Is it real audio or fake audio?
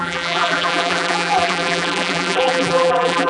fake